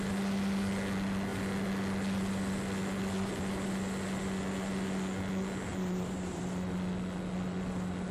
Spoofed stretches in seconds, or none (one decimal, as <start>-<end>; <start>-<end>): 5.7-6.4